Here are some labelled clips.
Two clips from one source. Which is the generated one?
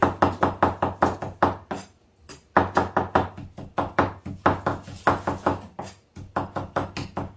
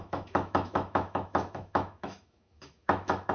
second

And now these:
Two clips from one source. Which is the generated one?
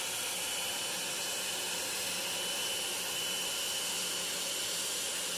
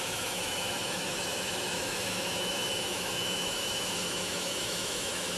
second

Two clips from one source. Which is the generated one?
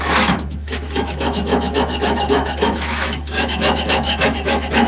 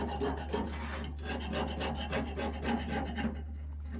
first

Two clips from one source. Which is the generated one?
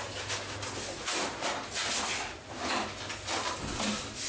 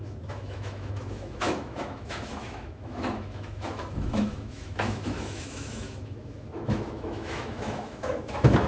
second